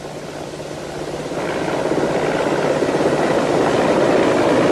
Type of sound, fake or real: real